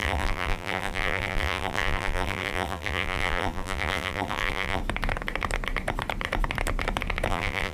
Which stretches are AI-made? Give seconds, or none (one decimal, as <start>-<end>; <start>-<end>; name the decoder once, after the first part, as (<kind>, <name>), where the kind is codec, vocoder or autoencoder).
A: 0.0-4.8 (vocoder, BigVGAN v2); 7.3-7.7